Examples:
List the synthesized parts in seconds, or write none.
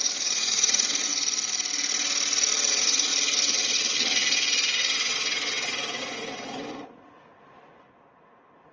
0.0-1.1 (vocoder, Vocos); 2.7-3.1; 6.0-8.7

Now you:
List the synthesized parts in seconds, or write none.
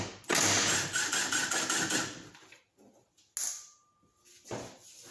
none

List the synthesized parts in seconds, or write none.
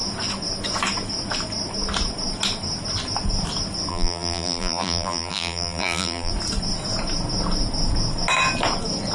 3.9-6.3 (vocoder, BigVGAN v2)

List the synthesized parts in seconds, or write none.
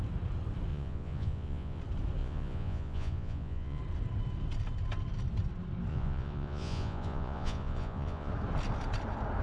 0.7-1.8 (vocoder, Vocos); 2.2-3.8; 5.9-8.3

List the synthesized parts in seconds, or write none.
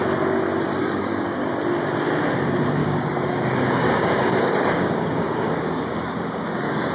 0.8-1.5 (codec, DAC); 2.8-6.9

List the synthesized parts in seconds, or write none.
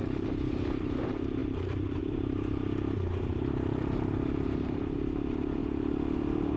0.0-2.6 (vocoder, BigVGAN v2); 3.3-5.6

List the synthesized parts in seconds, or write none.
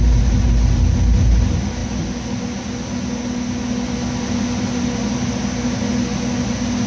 none